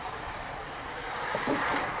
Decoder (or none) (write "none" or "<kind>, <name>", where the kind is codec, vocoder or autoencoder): none